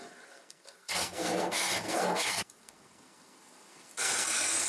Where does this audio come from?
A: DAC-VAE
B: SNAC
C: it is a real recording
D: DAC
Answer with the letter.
B